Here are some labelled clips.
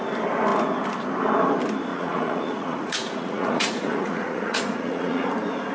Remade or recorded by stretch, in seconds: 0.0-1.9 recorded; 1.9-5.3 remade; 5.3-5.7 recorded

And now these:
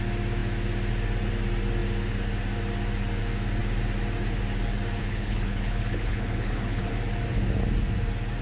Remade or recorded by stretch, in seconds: 0.0-5.0 recorded; 5.0-6.9 remade; 6.9-8.4 recorded

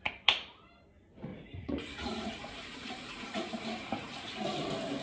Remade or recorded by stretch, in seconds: 0.0-1.3 recorded; 1.3-4.3 remade; 4.3-5.0 recorded

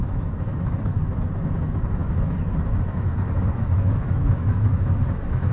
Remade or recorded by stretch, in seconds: 0.0-1.0 remade; 1.0-2.0 recorded; 2.0-5.5 remade

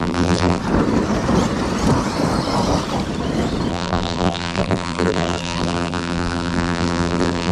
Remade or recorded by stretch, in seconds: 0.0-0.6 remade; 0.6-3.7 recorded; 3.7-7.5 remade

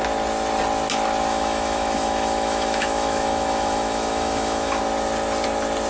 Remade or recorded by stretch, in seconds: 0.0-1.3 recorded; 1.3-4.8 remade; 4.8-5.9 recorded

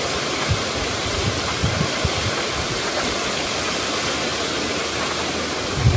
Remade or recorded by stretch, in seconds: 0.0-6.0 recorded

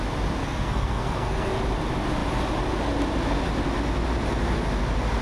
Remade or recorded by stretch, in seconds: 0.0-0.4 recorded; 0.4-1.5 remade; 1.5-5.2 recorded